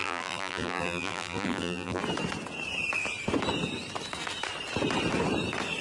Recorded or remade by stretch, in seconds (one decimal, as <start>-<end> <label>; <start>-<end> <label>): 0.0-2.0 remade; 2.0-5.8 recorded

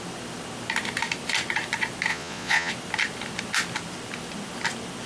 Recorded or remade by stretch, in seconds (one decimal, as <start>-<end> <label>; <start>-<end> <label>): 0.0-2.1 recorded; 2.1-2.7 remade; 2.7-5.1 recorded

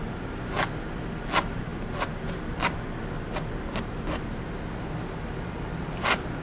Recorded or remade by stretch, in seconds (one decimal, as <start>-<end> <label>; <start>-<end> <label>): 0.0-6.4 recorded

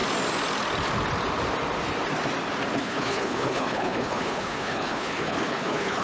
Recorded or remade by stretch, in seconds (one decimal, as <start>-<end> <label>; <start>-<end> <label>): 0.0-2.8 recorded; 2.8-6.0 remade